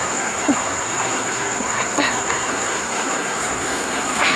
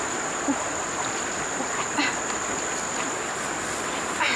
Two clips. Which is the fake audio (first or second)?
first